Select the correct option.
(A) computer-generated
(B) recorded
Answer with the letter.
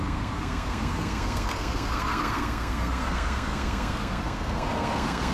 A